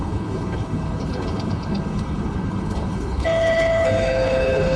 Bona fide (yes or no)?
no